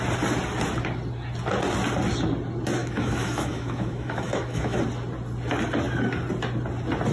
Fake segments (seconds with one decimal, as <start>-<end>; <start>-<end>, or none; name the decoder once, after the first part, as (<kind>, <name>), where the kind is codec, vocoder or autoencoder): 2.8-4.8 (autoencoder, DAC-VAE)